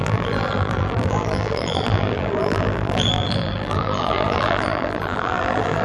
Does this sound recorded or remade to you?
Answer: remade